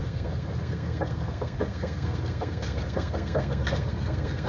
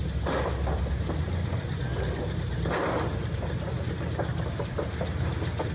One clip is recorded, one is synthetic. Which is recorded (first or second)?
second